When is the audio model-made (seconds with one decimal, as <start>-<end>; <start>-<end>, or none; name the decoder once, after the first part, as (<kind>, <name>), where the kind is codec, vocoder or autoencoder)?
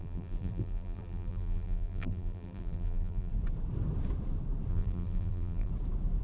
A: 0.0-3.3 (vocoder, BigVGAN v2); 4.7-5.7